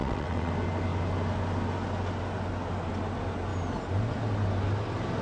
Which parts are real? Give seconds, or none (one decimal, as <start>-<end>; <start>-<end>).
0.5-5.2